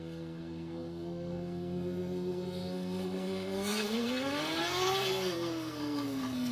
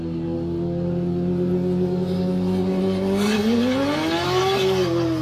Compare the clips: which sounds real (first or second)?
second